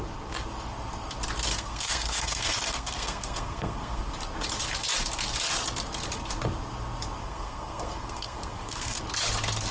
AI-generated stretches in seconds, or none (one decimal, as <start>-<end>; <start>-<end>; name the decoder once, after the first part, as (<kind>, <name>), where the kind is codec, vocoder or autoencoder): 1.5-4.0 (codec, SNAC); 7.2-9.0